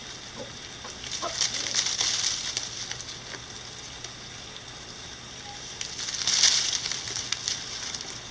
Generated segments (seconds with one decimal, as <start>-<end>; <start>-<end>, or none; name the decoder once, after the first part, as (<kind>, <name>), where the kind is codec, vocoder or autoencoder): none